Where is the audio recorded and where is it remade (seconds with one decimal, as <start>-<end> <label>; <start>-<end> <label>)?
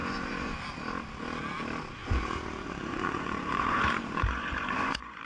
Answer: 0.0-0.6 remade; 0.6-2.0 recorded; 2.0-5.2 remade